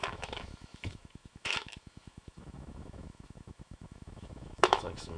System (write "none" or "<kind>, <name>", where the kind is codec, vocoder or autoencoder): autoencoder, DAC-VAE